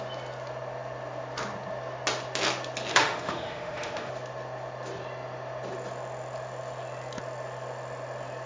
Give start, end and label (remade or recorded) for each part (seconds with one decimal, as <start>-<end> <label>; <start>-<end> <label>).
0.0-2.9 recorded; 2.9-4.1 remade; 4.1-8.5 recorded